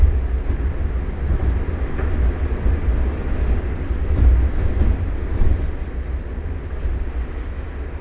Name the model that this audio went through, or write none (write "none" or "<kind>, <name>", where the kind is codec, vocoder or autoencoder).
none